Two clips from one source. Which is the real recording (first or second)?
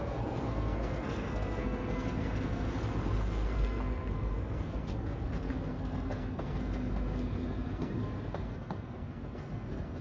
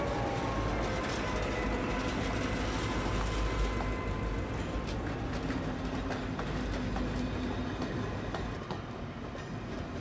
second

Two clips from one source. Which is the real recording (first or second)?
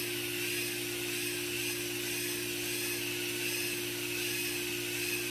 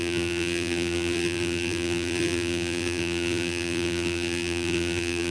first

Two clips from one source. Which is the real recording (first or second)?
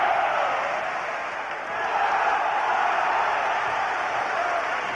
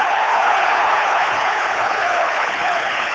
first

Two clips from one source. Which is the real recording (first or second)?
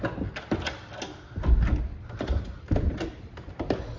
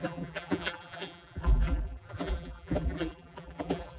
first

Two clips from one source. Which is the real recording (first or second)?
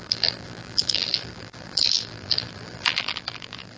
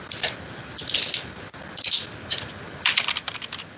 second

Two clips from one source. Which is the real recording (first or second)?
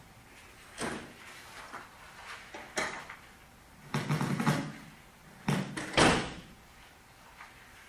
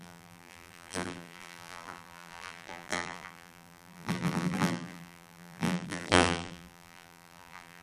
first